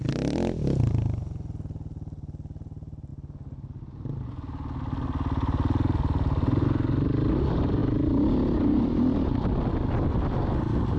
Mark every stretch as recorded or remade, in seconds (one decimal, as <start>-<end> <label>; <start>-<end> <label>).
0.0-11.0 recorded